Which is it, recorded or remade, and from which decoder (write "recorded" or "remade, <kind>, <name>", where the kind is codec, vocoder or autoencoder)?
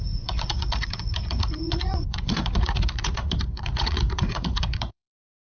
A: remade, vocoder, Vocos